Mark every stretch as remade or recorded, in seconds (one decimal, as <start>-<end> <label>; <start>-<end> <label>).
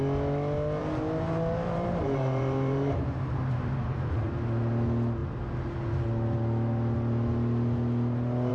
0.0-0.8 recorded; 0.8-3.7 remade; 3.7-8.5 recorded